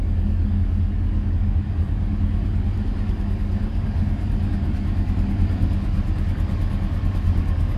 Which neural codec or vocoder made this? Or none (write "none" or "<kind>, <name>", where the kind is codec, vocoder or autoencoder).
codec, DAC